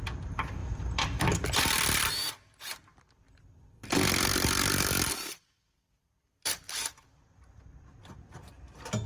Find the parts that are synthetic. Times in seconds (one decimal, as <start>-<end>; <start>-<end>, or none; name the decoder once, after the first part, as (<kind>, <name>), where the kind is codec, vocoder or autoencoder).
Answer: 0.6-1.6 (vocoder, BigVGAN v2); 4.3-8.0